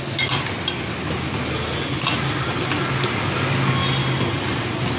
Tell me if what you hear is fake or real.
real